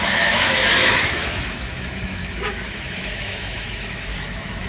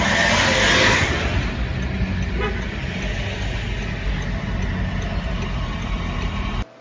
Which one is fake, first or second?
first